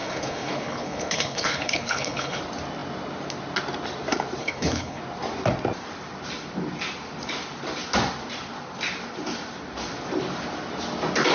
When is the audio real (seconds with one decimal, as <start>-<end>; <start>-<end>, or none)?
2.4-4.4; 5.0-11.3